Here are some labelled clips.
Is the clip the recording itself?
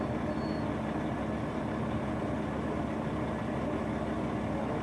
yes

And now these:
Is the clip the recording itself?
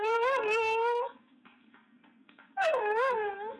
no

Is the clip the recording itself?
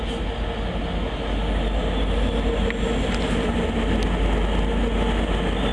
yes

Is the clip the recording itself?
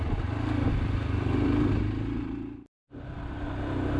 yes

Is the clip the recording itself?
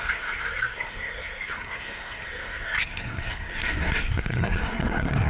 no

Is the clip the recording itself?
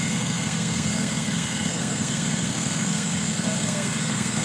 no